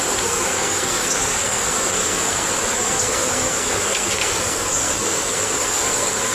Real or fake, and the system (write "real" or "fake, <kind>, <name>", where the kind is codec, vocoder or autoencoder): fake, codec, SNAC